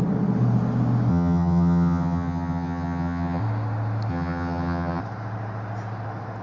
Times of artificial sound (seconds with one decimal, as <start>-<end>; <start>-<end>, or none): 1.1-3.4; 4.1-5.0